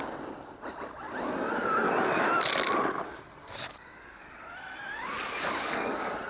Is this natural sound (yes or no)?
yes